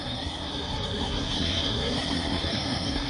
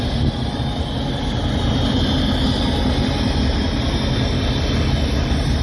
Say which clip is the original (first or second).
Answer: second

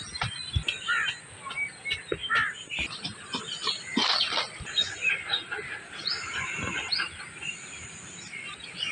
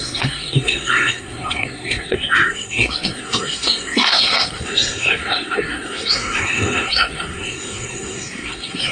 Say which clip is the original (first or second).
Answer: first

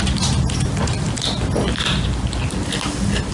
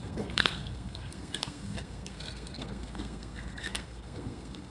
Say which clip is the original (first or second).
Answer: first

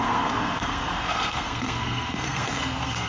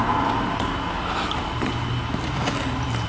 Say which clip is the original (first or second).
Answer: second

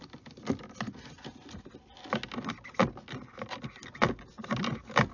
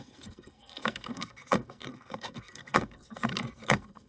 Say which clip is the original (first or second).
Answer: first